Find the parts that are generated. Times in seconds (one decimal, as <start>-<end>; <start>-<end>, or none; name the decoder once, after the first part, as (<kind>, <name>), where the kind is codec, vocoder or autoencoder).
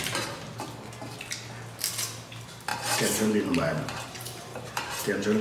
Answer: 2.7-5.4 (vocoder, BigVGAN v2)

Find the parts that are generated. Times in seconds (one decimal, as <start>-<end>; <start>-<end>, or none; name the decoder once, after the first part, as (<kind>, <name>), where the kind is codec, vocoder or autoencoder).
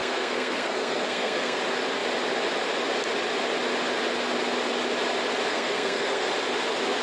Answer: 0.0-1.6 (codec, SNAC); 5.5-6.3